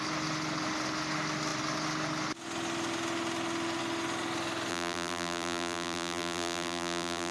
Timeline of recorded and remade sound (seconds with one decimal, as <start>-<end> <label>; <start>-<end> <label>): 0.0-4.7 recorded; 4.7-7.3 remade